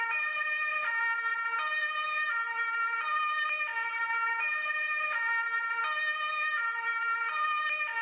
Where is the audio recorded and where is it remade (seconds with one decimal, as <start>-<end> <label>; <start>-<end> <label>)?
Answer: 0.0-1.3 recorded; 1.3-2.3 remade; 2.3-4.0 recorded; 4.0-5.0 remade; 5.0-8.0 recorded

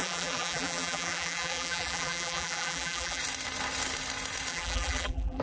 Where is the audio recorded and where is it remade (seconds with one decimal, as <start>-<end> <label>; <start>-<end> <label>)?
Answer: 0.0-3.2 remade; 3.2-4.5 recorded; 4.5-5.4 remade

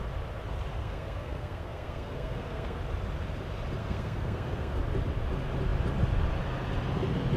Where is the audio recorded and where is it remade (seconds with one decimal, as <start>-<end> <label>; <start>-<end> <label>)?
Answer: 0.0-0.8 recorded; 0.8-2.8 remade; 2.8-3.8 recorded; 3.8-4.8 remade; 4.8-7.4 recorded

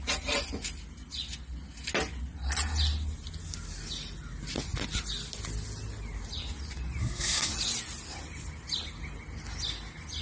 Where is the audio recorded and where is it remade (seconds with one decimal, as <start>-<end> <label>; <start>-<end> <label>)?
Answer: 0.0-7.0 recorded; 7.0-7.5 remade; 7.5-10.2 recorded